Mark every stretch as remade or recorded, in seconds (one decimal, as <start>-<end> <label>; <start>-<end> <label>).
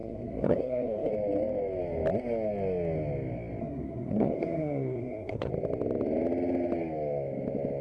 0.0-1.1 remade; 1.1-3.6 recorded; 3.6-5.5 remade; 5.5-7.8 recorded